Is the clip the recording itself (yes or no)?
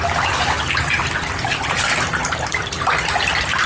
yes